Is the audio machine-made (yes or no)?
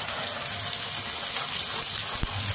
no